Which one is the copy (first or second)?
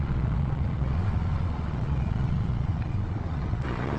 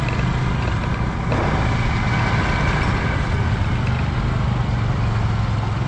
first